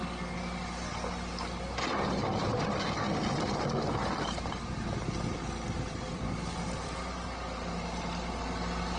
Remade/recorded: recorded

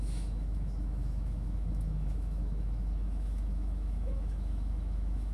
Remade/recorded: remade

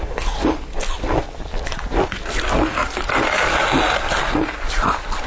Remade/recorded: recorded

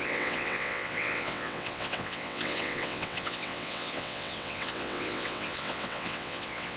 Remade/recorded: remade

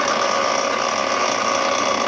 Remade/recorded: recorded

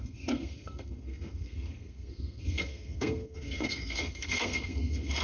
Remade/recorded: remade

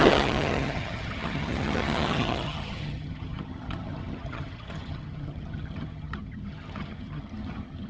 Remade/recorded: remade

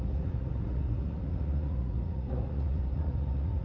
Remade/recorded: remade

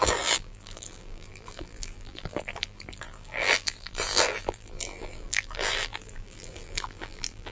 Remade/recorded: remade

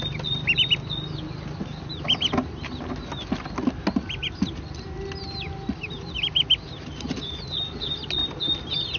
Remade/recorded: recorded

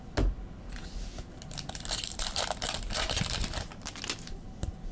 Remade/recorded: recorded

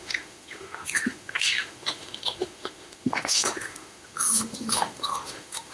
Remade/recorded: remade